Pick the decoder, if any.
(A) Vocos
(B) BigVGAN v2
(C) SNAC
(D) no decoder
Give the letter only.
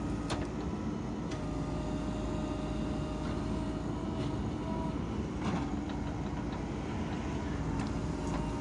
D